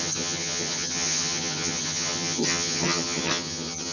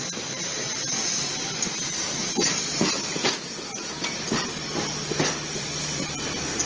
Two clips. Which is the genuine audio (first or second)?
second